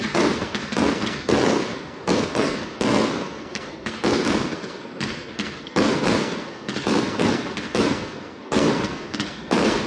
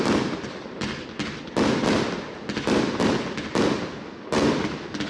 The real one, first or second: second